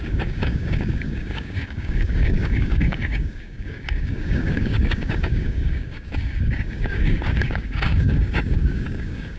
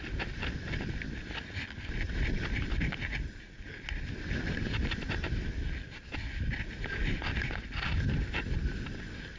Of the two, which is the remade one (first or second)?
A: first